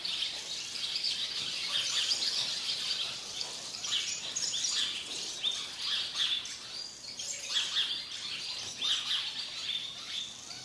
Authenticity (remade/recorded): recorded